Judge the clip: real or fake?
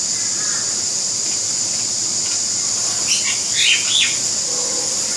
real